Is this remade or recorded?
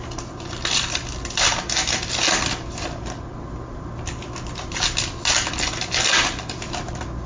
recorded